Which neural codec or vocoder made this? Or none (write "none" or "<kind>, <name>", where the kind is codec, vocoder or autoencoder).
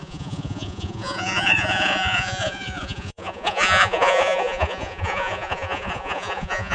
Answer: vocoder, Vocos